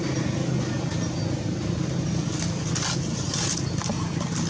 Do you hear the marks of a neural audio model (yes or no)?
no